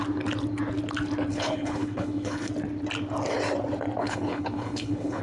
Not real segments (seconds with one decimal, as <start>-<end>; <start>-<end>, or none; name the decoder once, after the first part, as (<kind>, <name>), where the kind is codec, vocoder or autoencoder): 1.3-2.5 (codec, HILCodec); 4.0-5.2